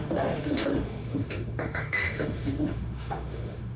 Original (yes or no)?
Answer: no